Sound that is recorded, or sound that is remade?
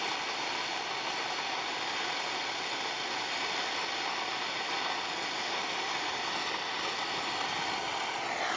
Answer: recorded